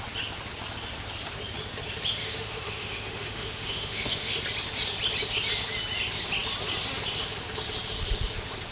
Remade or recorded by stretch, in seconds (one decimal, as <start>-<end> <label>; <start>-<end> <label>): 0.0-2.2 recorded; 2.2-4.4 remade; 4.4-8.7 recorded